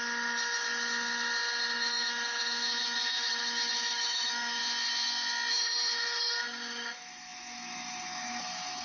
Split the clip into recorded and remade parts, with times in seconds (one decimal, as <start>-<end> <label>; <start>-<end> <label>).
0.0-4.6 remade; 4.6-5.5 recorded; 5.5-8.8 remade